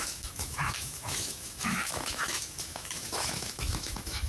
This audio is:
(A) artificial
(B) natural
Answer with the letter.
A